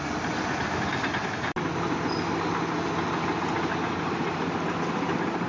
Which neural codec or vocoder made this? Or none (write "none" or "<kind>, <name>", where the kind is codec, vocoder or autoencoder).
none